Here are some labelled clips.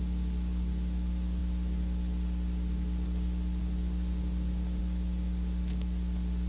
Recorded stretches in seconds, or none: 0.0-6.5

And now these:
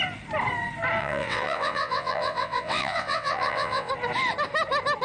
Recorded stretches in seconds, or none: 0.0-1.0; 3.9-5.0

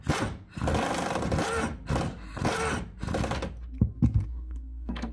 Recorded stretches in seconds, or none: 0.0-4.3

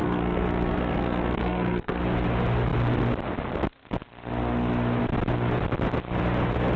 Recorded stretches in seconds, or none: 2.0-6.8

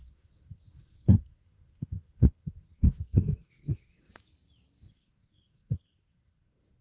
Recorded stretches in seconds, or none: 4.1-4.9

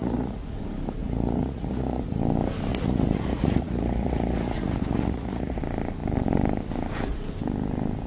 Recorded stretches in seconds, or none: 0.6-1.0; 2.2-2.7; 5.6-8.1